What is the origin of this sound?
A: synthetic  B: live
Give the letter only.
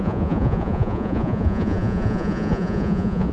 A